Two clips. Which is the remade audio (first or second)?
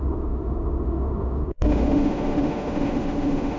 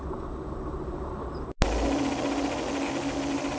first